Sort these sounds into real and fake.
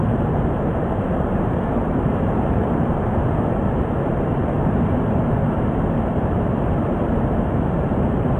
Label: fake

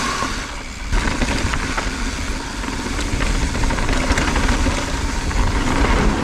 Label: real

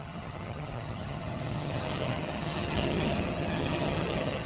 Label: fake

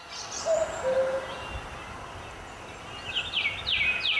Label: real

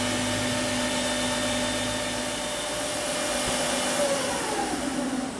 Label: real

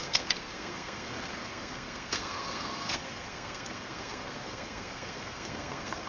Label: fake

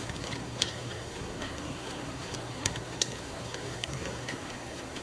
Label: fake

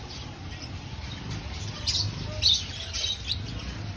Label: real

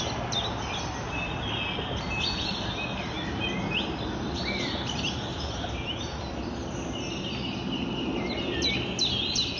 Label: real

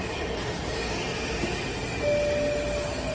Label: real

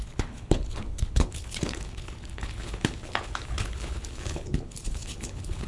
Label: fake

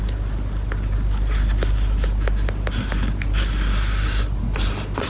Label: real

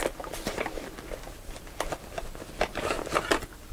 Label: real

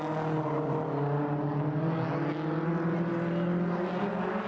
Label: real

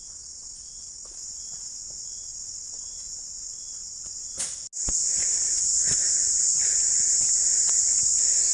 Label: real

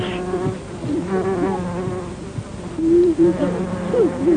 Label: real